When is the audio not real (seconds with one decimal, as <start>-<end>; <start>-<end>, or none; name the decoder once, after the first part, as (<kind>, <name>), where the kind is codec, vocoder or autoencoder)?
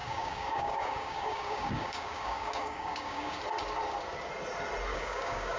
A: 0.0-3.4 (codec, DAC); 4.9-5.6